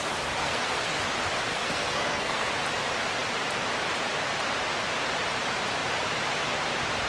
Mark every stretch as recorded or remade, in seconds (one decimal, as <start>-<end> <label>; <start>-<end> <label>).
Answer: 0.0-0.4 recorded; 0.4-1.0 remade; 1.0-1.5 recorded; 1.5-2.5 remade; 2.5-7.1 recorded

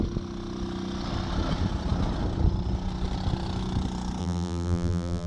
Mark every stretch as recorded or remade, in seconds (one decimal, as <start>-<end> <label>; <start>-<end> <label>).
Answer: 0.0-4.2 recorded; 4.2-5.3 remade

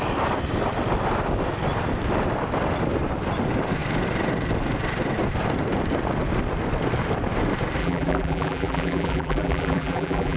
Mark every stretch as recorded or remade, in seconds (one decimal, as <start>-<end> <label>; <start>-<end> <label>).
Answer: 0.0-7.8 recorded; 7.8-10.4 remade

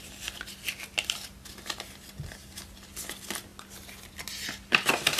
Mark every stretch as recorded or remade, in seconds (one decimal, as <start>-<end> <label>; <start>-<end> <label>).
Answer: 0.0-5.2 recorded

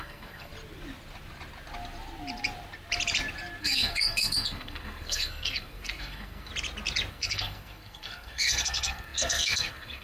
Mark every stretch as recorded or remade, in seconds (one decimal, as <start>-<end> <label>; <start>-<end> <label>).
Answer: 0.0-0.5 remade; 0.5-3.6 recorded; 3.6-6.5 remade; 6.5-7.1 recorded; 7.1-10.0 remade

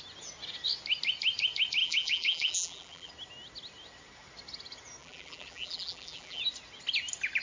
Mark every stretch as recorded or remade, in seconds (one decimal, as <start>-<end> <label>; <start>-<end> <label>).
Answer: 0.0-1.8 recorded; 1.8-3.1 remade; 3.1-5.0 recorded; 5.0-6.4 remade; 6.4-7.4 recorded